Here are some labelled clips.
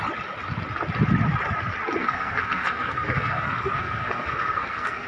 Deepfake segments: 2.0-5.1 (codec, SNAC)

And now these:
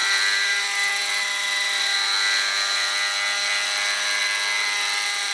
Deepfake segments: none

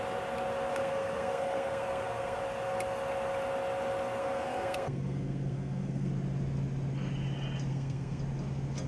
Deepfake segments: 0.7-2.4 (codec, SNAC); 4.2-6.1; 7.7-8.2

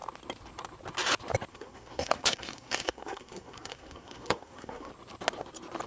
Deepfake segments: 1.5-4.9 (codec, SNAC)